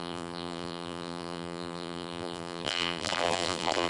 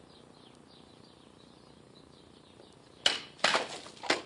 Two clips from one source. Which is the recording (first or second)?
second